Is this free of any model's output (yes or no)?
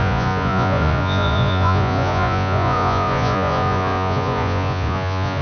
no